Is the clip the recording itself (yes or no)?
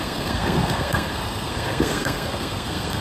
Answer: no